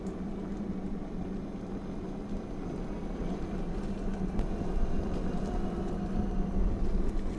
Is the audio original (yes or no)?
yes